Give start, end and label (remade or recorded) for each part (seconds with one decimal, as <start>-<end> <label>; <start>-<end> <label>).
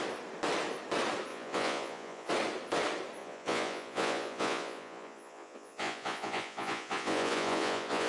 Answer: 0.0-1.3 recorded; 1.3-2.3 remade; 2.3-3.2 recorded; 3.2-8.1 remade